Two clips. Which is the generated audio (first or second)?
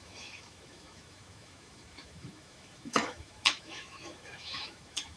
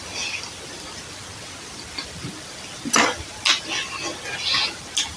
first